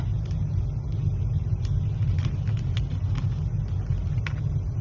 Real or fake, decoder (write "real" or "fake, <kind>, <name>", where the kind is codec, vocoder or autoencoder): real